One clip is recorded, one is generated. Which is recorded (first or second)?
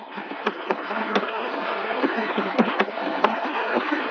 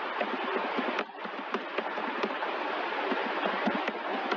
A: second